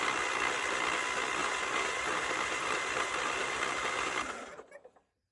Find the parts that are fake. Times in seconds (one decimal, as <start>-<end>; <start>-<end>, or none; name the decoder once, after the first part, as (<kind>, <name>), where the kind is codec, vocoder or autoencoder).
1.4-4.5 (vocoder, BigVGAN v2)